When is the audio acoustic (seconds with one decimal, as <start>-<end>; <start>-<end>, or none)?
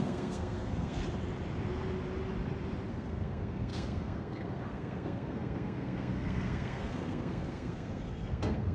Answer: 1.0-2.9